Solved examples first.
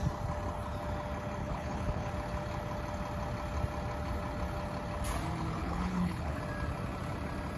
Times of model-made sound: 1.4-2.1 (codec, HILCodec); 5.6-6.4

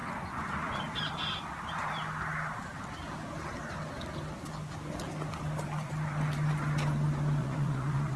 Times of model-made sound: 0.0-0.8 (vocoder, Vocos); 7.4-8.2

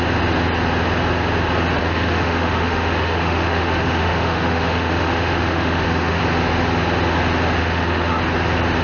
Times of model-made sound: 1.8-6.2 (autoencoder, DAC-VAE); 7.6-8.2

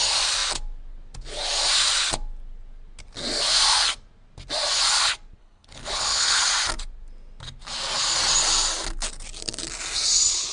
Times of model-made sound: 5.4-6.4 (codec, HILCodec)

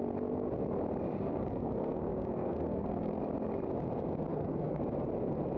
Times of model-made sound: 1.1-3.2 (codec, SNAC); 4.3-4.8

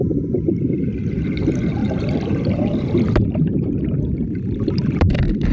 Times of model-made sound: 1.8-5.1 (vocoder, BigVGAN v2)

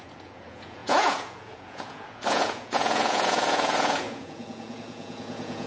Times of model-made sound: 0.0-5.7 (vocoder, Vocos)

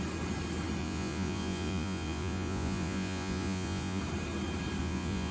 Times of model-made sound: 0.8-4.0 (vocoder, Vocos); 4.8-5.3